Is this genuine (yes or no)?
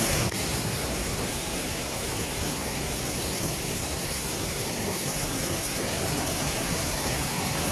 no